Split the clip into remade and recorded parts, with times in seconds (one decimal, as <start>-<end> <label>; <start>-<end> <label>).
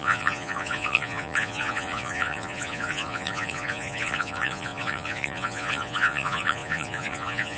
0.0-7.6 remade